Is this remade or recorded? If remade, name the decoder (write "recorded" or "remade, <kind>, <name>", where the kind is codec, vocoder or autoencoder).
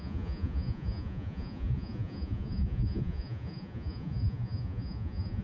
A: remade, vocoder, Vocos